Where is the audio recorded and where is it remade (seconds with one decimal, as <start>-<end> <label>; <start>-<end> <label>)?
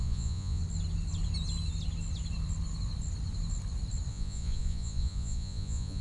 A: 0.0-0.6 remade; 0.6-4.1 recorded; 4.1-6.0 remade